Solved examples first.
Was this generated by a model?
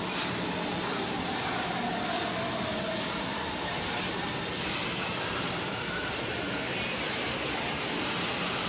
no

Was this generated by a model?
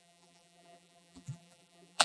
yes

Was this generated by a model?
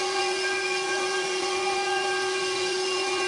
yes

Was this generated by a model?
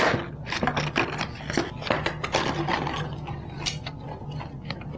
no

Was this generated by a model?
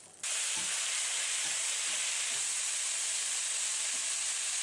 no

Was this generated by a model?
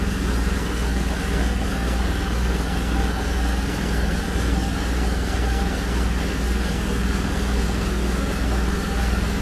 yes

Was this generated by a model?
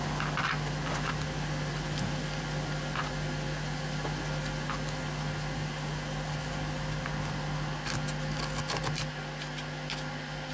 no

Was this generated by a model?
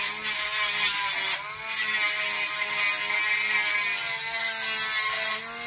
no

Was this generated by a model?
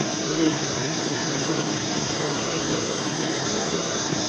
yes